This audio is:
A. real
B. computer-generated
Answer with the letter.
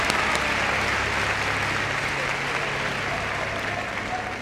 A